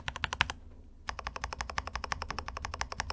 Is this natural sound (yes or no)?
yes